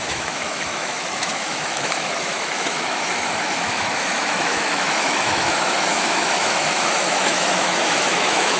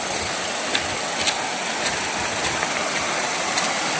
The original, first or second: second